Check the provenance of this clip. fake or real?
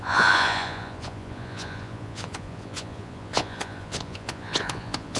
fake